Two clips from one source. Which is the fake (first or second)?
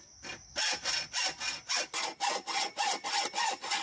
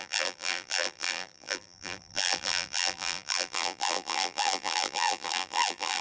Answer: second